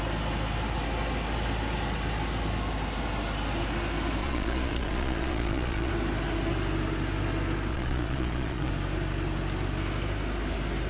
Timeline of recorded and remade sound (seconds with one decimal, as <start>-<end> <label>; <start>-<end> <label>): 0.0-4.2 recorded; 4.2-5.9 remade; 5.9-7.7 recorded; 7.7-8.7 remade; 8.7-10.9 recorded